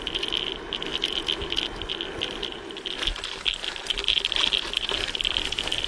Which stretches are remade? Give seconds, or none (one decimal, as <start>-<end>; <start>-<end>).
none